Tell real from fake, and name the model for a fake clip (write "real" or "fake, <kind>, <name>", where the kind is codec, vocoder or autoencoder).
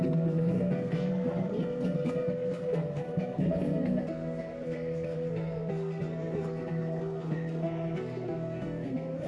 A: fake, codec, SNAC